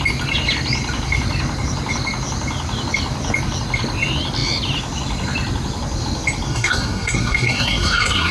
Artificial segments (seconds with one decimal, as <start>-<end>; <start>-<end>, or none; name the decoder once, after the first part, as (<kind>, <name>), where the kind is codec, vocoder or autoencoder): 6.5-8.3 (codec, SNAC)